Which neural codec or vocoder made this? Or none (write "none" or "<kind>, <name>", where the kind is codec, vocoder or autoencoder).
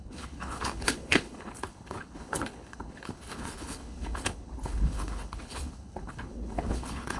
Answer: codec, HILCodec